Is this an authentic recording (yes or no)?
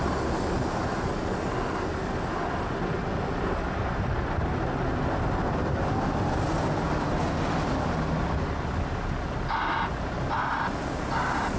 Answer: yes